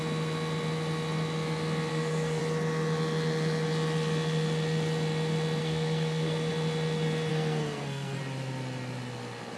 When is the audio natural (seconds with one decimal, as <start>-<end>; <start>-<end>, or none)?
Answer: 0.0-1.9; 2.4-5.6; 6.5-7.3; 8.2-9.6

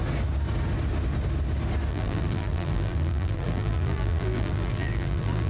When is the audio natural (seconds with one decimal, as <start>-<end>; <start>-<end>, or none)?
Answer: 0.0-1.9

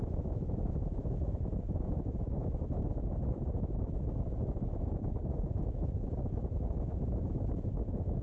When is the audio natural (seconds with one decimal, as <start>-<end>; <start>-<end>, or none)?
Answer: none

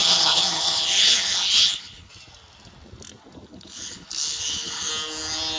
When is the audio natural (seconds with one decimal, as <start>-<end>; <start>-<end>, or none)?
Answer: 2.1-3.5; 4.9-5.6

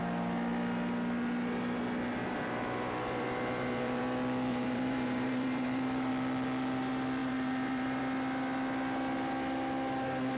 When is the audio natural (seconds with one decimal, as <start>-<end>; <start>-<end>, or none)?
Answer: 0.0-2.2; 4.0-4.5; 6.1-7.2; 8.0-10.4

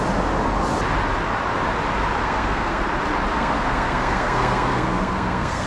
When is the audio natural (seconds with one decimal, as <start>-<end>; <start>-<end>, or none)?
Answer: 0.0-2.2; 2.8-3.3